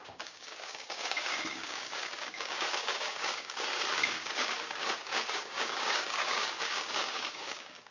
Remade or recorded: remade